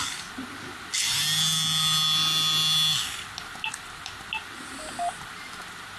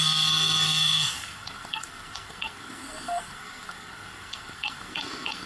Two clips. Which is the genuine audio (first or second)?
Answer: first